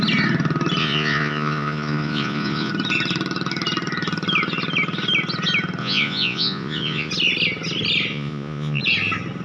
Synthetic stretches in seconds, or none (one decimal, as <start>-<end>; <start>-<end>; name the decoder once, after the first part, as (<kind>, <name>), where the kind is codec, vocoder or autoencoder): 0.8-2.7 (vocoder, Vocos); 5.8-7.1; 8.1-8.8

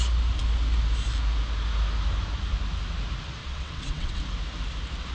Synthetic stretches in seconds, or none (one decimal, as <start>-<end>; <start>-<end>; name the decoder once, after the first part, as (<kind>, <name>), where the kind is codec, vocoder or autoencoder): 3.4-4.2 (vocoder, WaveNeXt)